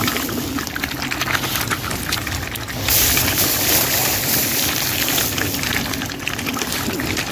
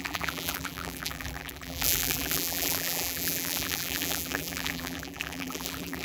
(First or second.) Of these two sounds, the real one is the first